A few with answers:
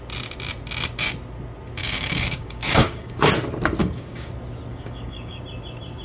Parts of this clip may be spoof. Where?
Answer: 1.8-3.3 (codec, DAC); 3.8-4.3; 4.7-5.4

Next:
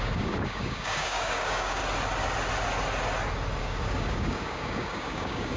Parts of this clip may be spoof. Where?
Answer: 0.0-1.8 (codec, DAC); 3.6-5.6

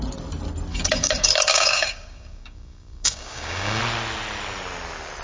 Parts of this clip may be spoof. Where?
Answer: 0.7-3.8 (codec, DAC)